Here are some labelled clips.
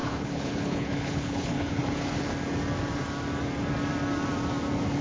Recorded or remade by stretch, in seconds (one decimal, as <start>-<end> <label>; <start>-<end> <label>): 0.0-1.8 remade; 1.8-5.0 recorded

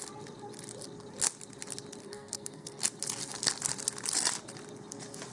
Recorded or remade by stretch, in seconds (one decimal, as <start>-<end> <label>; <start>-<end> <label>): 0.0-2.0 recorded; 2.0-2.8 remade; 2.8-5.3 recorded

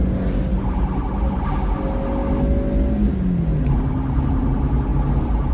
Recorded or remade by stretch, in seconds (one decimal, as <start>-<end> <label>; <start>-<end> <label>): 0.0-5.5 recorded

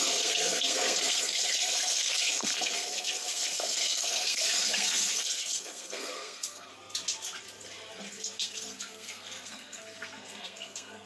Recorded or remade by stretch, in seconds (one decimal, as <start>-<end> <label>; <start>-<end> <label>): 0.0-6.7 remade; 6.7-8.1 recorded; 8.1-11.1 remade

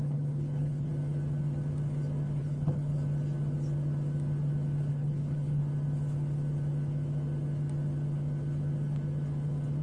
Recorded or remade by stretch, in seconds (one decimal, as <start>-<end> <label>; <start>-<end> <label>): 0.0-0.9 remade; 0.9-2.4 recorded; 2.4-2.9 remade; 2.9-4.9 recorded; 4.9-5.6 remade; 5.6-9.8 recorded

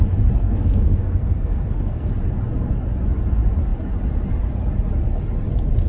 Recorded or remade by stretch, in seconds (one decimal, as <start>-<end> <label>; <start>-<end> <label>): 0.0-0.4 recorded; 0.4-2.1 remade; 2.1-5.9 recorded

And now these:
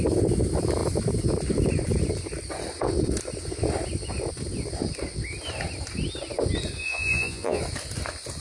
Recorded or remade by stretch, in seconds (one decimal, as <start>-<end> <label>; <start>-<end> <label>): 0.0-6.8 recorded; 6.8-7.6 remade; 7.6-8.4 recorded

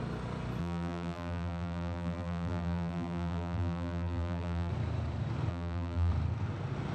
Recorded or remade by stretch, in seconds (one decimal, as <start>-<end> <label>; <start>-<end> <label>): 0.0-0.6 recorded; 0.6-4.7 remade; 4.7-5.5 recorded; 5.5-6.1 remade; 6.1-6.9 recorded